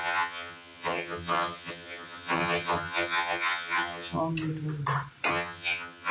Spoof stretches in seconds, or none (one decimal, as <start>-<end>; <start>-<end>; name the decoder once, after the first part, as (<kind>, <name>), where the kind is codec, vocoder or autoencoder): 0.0-4.2 (vocoder, HiFi-GAN); 5.3-6.1